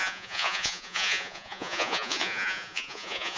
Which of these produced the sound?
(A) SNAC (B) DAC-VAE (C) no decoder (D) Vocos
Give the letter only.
D